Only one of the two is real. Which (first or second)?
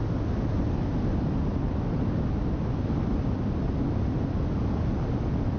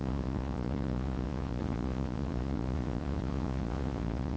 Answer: first